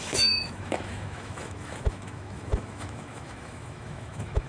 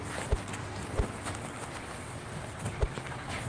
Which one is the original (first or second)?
second